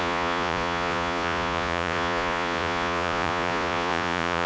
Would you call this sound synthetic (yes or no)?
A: yes